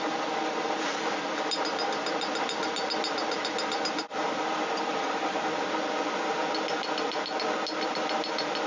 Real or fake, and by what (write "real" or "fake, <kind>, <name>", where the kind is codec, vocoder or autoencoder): real